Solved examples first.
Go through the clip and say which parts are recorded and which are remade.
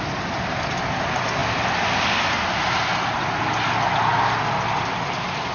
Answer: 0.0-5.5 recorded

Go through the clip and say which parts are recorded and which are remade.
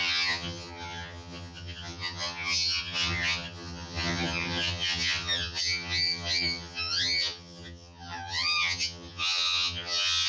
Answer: 0.0-10.3 remade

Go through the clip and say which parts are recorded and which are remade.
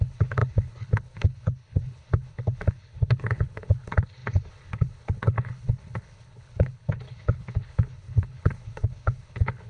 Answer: 0.0-9.7 remade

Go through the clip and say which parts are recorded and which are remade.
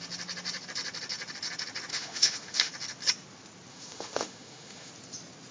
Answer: 0.0-1.9 recorded; 1.9-2.7 remade; 2.7-3.7 recorded; 3.7-4.9 remade; 4.9-5.5 recorded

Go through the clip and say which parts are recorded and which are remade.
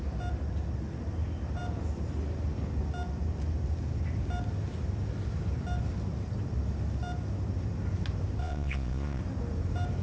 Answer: 0.0-8.4 recorded; 8.4-9.2 remade; 9.2-10.0 recorded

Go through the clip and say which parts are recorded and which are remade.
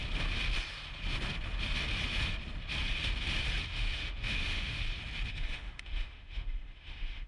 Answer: 0.0-3.7 recorded; 3.7-4.8 remade; 4.8-5.3 recorded; 5.3-7.3 remade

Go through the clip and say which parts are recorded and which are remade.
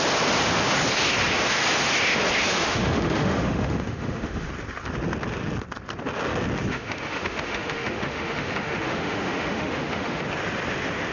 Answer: 0.0-2.5 recorded; 2.5-4.5 remade; 4.5-6.7 recorded; 6.7-10.2 remade; 10.2-11.1 recorded